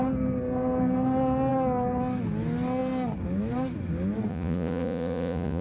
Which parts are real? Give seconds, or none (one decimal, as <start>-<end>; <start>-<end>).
0.0-4.3